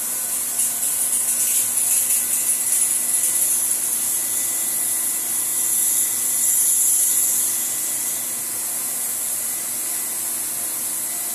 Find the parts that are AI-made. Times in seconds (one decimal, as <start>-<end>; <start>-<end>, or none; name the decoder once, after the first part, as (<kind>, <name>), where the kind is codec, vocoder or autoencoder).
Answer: none